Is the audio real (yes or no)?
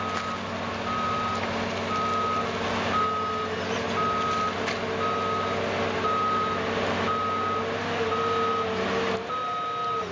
yes